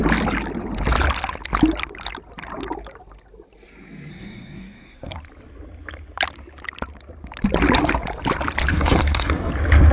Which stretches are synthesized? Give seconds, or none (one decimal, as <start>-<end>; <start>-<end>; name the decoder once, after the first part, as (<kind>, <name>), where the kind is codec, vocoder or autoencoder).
4.1-5.2 (codec, SNAC); 8.7-9.5